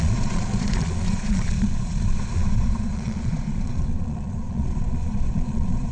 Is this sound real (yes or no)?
no